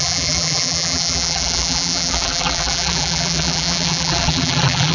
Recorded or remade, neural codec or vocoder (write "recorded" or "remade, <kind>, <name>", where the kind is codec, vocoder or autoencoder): remade, vocoder, BigVGAN v2